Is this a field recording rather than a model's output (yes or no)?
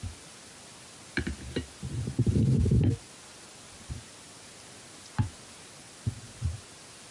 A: yes